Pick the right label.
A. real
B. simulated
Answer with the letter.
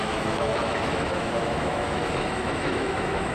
B